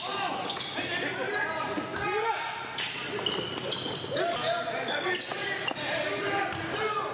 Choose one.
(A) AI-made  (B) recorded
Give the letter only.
B